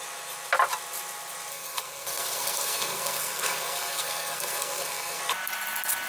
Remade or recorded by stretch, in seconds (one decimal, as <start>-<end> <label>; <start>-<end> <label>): 0.0-1.5 recorded; 1.5-5.2 remade; 5.2-6.1 recorded